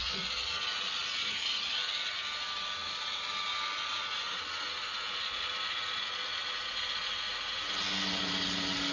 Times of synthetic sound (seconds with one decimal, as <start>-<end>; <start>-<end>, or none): none